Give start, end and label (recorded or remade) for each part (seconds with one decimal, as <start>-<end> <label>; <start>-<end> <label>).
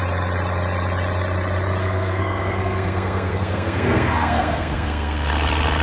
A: 0.0-1.8 recorded; 1.8-5.3 remade; 5.3-5.8 recorded